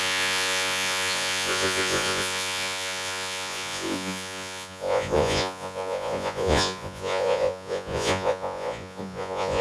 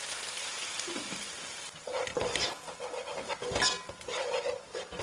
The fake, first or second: first